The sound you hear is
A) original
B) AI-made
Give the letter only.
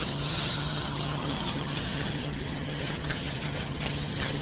B